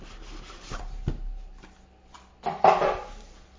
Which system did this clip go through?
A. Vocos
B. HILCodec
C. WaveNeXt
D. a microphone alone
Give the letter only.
D